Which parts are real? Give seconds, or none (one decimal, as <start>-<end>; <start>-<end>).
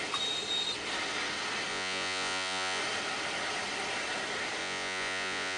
0.0-1.7; 2.8-4.6